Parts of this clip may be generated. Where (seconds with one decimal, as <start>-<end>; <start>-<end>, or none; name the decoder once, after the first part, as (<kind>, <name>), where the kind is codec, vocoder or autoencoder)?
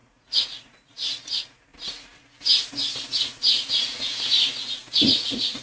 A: 0.0-1.7 (vocoder, Vocos); 5.1-5.6